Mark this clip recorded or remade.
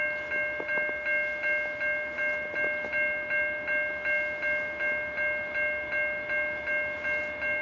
recorded